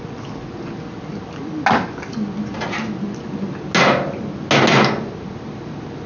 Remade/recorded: recorded